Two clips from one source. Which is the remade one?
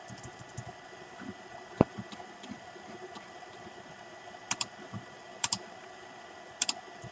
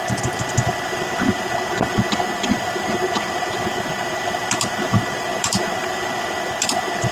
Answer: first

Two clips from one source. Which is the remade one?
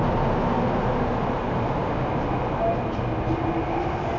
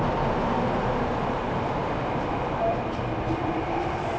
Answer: second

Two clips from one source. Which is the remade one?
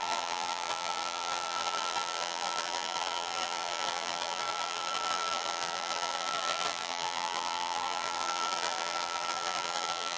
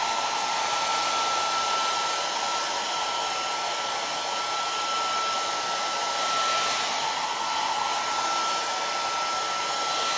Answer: first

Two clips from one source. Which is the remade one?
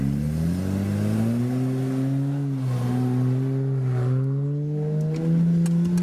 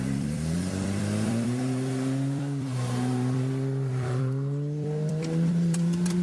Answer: second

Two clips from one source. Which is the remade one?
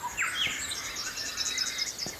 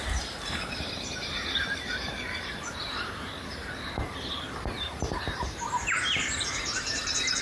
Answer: second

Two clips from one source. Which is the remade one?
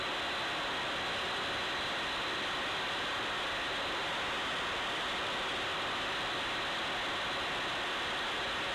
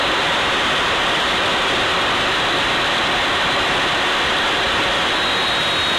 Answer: second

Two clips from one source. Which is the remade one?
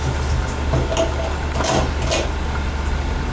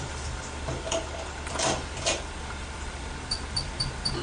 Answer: second